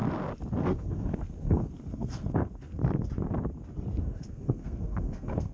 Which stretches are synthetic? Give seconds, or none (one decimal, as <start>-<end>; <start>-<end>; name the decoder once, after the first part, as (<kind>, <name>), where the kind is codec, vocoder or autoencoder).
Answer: 0.6-2.8 (codec, SNAC); 4.0-5.5